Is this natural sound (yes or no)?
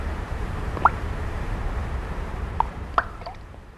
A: no